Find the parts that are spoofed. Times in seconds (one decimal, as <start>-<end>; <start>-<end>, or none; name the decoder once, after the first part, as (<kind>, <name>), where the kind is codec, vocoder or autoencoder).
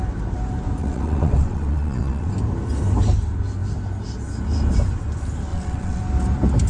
0.8-2.3 (vocoder, WaveNeXt); 5.5-6.0